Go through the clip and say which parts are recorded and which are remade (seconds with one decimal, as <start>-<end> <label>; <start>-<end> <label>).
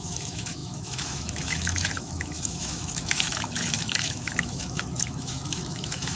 0.0-6.2 remade